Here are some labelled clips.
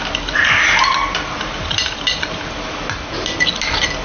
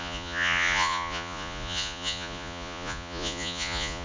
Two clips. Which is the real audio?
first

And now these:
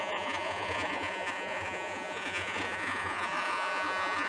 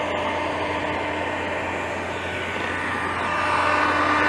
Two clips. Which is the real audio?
second